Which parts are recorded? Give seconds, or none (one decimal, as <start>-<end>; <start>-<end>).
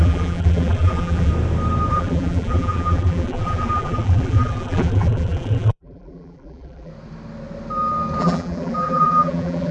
1.3-1.9; 6.9-8.2